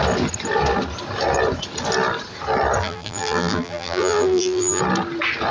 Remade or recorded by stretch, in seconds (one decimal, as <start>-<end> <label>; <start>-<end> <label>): 0.0-2.8 recorded; 2.8-4.8 remade; 4.8-5.5 recorded